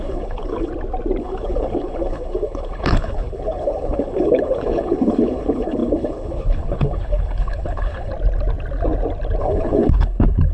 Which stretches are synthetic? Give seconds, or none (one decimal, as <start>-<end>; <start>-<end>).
0.0-0.7; 1.2-8.1; 9.4-10.5